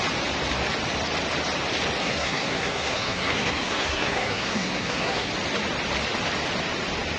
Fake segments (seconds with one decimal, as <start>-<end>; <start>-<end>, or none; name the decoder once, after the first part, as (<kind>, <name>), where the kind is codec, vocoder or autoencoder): 2.0-5.3 (codec, SNAC)